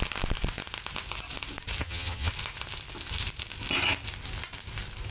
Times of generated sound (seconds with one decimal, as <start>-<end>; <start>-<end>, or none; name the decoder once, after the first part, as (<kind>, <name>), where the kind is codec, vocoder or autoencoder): 1.8-2.3 (vocoder, HiFi-GAN)

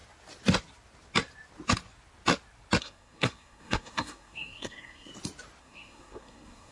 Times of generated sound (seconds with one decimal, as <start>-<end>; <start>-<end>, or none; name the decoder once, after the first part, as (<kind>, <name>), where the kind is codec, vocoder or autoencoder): 2.8-5.1 (codec, SNAC); 5.6-6.7

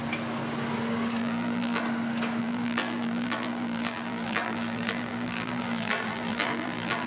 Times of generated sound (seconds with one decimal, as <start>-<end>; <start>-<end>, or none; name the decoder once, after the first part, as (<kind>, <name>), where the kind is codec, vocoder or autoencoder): 1.2-1.8 (vocoder, BigVGAN v2); 2.4-7.1

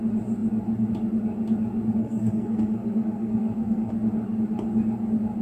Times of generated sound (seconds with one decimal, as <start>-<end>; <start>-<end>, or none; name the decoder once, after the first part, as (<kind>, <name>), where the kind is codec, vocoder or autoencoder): 2.0-3.9 (codec, SNAC)

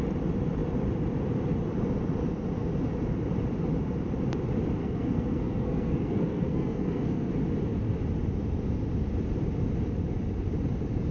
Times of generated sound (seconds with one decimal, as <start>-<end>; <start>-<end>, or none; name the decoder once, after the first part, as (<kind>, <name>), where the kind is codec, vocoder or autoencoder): 4.8-7.3 (codec, SNAC)